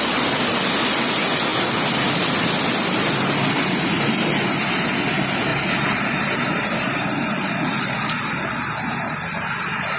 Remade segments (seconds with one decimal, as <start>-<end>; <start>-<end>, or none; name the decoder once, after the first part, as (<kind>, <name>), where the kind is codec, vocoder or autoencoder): 1.5-4.7 (vocoder, BigVGAN v2); 5.5-7.0